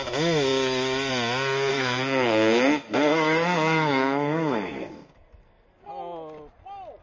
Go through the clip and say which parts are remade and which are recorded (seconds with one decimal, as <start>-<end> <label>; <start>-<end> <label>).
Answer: 0.0-1.7 recorded; 1.7-5.9 remade; 5.9-7.0 recorded